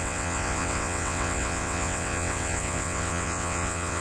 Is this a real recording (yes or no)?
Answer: no